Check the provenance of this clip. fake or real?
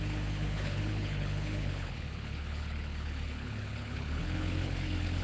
fake